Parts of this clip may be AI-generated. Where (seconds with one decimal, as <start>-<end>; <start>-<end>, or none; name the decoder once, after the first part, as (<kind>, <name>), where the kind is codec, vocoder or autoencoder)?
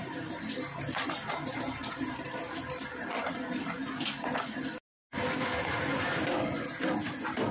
1.9-3.8 (vocoder, BigVGAN v2); 5.7-7.5